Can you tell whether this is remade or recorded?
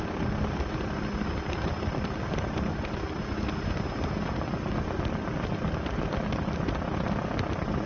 recorded